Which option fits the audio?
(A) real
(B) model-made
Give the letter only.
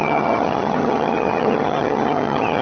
B